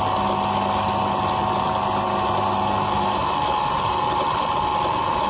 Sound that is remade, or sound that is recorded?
recorded